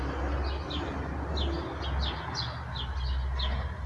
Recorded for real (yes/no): yes